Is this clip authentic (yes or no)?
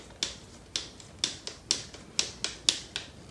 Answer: yes